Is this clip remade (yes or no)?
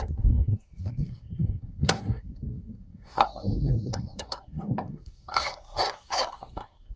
yes